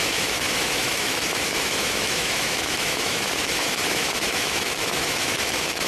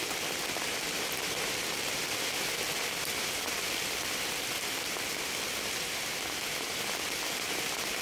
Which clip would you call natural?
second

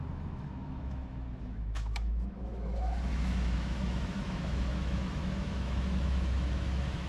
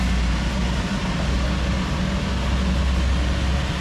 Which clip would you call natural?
second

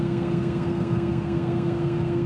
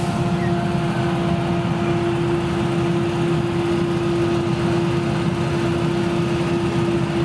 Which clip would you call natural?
second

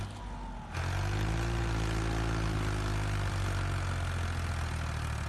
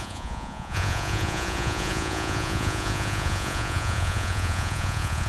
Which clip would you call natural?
first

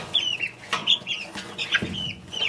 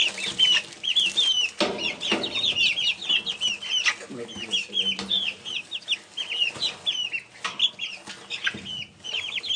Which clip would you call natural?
second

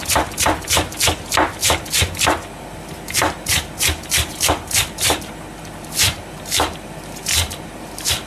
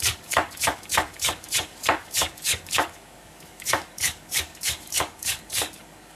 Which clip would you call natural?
first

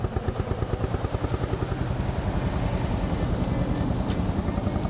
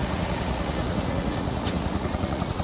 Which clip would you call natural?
first